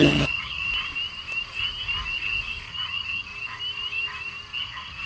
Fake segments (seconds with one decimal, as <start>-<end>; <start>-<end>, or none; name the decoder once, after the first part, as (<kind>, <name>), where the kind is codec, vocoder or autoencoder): 0.0-0.7 (vocoder, HiFi-GAN); 2.7-3.3; 4.6-5.1